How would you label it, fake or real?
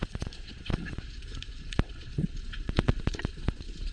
fake